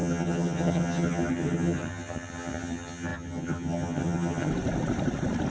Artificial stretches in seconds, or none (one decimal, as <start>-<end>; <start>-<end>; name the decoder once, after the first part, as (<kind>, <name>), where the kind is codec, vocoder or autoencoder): 0.0-4.5 (vocoder, HiFi-GAN)